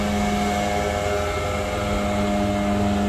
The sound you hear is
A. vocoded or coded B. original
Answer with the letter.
B